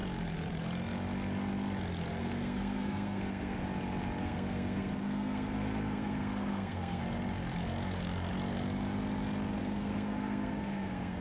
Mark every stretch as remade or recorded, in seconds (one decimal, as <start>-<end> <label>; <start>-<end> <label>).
0.0-2.2 recorded; 2.2-3.6 remade; 3.6-4.2 recorded; 4.2-7.0 remade; 7.0-9.6 recorded; 9.6-11.2 remade